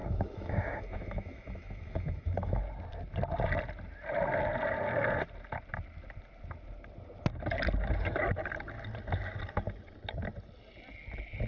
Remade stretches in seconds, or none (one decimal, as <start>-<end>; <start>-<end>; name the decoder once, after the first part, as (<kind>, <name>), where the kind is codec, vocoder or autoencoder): 0.0-2.6 (autoencoder, DAC-VAE)